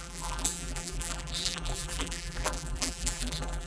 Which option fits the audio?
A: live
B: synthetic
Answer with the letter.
B